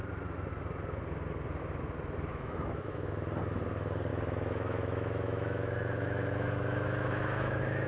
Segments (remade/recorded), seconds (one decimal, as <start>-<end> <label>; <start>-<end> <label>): 0.0-2.3 recorded; 2.3-3.1 remade; 3.1-4.1 recorded; 4.1-7.9 remade